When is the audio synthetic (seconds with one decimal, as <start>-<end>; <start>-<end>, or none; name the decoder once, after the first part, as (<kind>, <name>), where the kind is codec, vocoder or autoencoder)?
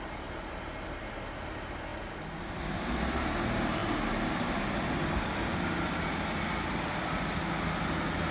none